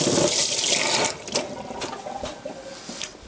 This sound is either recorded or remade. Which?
recorded